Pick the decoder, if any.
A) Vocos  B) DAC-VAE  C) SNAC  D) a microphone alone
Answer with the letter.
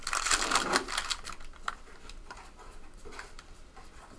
D